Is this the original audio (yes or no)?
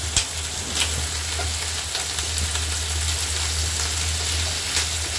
yes